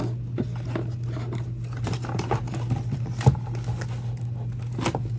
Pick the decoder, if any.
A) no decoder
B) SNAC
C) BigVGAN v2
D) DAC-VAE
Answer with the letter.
A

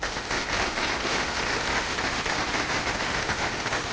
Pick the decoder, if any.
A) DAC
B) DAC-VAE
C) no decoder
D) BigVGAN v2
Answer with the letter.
B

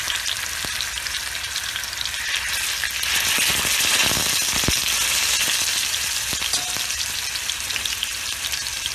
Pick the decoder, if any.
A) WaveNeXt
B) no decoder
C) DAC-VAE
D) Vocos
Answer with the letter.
B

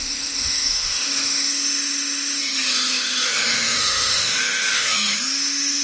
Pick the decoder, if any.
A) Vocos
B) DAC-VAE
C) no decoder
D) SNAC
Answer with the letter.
B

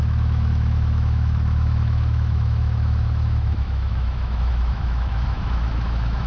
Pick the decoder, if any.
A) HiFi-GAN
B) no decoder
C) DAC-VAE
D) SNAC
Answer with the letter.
C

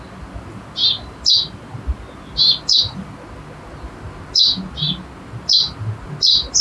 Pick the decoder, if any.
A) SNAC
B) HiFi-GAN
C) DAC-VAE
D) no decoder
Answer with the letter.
D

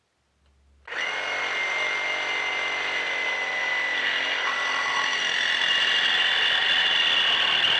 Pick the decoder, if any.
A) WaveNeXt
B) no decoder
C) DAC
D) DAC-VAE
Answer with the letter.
B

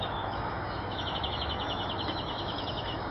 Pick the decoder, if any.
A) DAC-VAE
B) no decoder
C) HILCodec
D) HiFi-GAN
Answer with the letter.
A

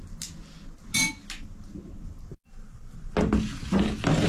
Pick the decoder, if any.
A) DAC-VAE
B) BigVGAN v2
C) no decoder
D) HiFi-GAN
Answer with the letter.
C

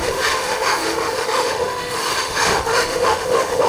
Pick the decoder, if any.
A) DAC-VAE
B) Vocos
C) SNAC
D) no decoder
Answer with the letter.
A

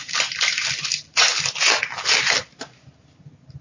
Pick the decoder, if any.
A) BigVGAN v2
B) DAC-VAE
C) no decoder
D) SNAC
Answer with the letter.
C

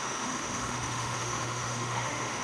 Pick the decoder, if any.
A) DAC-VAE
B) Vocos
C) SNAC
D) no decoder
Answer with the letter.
A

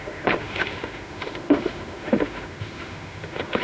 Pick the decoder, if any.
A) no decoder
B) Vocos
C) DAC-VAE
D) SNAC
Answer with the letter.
C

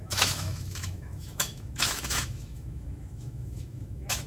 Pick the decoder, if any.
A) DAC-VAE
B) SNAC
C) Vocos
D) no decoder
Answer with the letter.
A